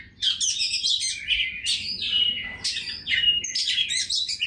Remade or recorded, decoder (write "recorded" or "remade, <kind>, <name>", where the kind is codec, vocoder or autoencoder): recorded